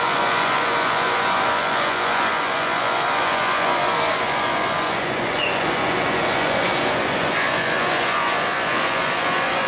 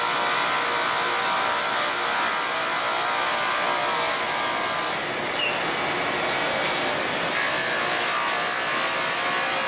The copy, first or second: first